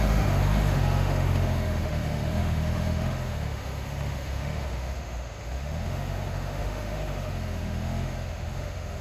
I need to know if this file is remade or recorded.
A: remade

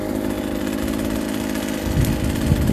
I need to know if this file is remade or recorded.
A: recorded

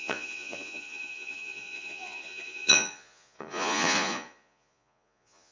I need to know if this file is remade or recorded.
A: remade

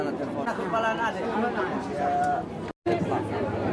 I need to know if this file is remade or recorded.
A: recorded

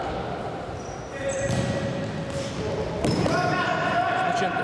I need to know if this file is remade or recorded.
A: remade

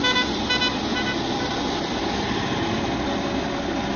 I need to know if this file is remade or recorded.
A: recorded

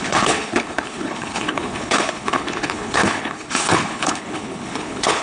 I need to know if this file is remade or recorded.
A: remade